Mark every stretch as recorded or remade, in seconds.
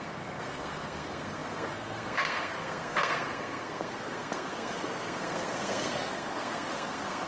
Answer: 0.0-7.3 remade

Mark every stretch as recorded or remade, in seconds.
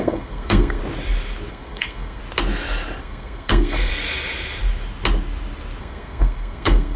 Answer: 0.0-0.8 remade; 0.8-1.5 recorded; 1.5-2.2 remade; 2.2-3.0 recorded; 3.0-3.9 remade; 3.9-5.8 recorded; 5.8-7.0 remade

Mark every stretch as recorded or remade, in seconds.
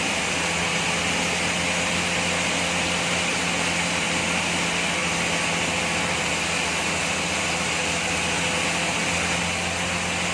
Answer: 0.0-10.3 recorded